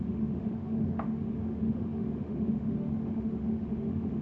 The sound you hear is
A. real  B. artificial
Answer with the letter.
B